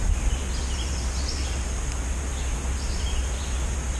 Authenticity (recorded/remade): recorded